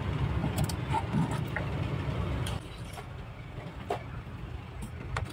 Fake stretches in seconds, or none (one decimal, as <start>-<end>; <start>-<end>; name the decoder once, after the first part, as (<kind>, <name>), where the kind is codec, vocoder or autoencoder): 0.0-5.3 (vocoder, BigVGAN v2)